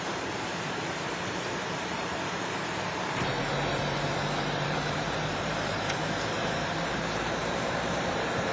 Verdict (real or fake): fake